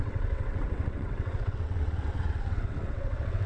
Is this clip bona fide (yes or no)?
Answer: no